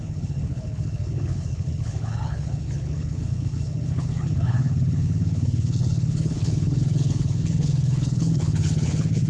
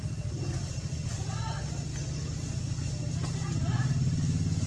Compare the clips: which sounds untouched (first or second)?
second